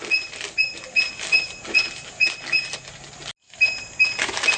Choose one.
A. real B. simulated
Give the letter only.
A